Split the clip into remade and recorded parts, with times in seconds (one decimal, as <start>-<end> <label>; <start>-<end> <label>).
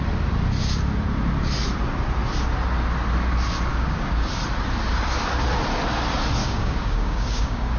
0.0-3.7 recorded; 3.7-4.3 remade; 4.3-6.4 recorded; 6.4-7.8 remade